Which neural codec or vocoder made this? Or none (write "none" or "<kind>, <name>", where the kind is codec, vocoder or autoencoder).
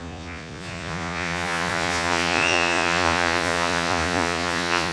vocoder, Vocos